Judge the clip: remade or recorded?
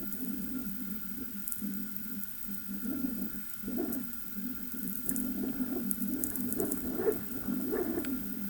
remade